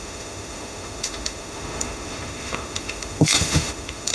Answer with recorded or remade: remade